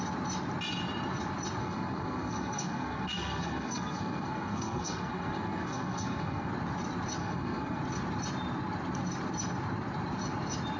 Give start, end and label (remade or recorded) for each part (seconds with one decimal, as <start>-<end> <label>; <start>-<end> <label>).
0.0-1.6 recorded; 1.6-6.5 remade; 6.5-7.2 recorded; 7.2-7.8 remade; 7.8-10.8 recorded